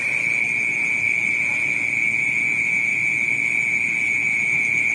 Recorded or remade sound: recorded